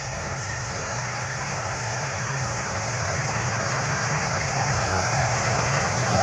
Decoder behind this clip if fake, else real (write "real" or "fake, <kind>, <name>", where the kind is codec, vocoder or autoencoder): fake, codec, SNAC